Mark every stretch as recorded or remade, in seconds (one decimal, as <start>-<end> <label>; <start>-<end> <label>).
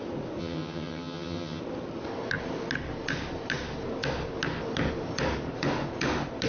0.0-0.4 recorded; 0.4-1.6 remade; 1.6-6.5 recorded